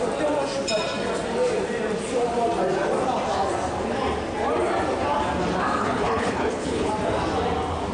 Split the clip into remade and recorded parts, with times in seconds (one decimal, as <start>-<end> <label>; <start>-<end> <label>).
0.0-5.8 recorded; 5.8-6.9 remade; 6.9-7.9 recorded